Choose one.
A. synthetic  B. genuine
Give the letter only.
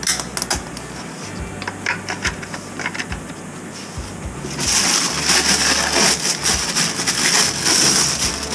B